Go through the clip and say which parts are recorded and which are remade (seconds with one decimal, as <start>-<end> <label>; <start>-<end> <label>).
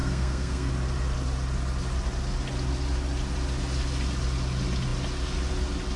0.0-0.7 remade; 0.7-6.0 recorded